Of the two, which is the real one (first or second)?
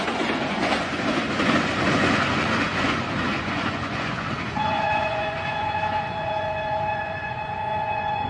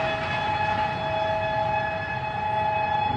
second